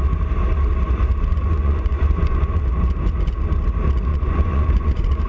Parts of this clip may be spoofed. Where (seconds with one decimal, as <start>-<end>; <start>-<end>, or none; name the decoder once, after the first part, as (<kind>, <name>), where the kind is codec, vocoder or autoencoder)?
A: 1.3-2.6 (vocoder, Vocos); 4.1-5.3